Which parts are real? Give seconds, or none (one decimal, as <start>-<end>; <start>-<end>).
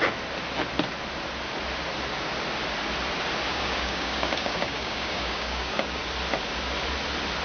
0.0-3.5; 6.0-7.4